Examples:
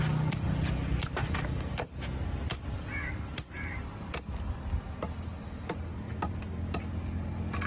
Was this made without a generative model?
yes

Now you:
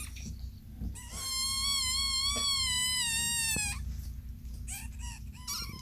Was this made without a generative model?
yes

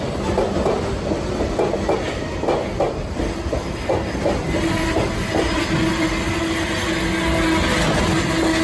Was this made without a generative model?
yes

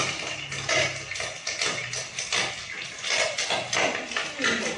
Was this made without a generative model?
yes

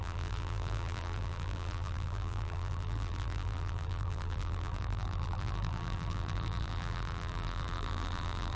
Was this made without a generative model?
no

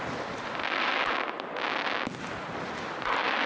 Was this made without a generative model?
yes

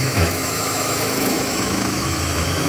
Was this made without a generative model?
no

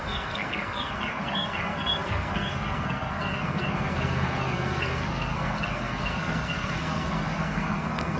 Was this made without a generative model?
no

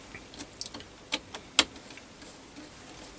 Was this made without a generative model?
yes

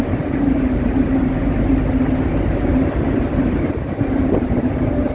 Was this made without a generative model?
no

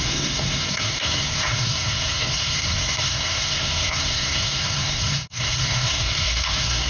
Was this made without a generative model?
no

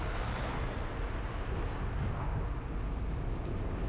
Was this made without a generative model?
yes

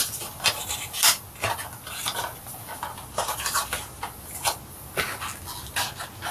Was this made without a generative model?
yes